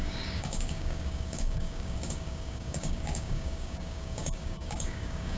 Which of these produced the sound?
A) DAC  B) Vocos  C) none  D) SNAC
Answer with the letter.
A